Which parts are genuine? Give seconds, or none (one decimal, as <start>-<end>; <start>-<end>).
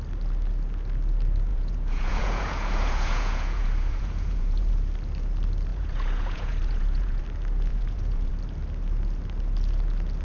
0.0-1.5; 4.7-5.7; 7.2-7.7; 8.3-10.2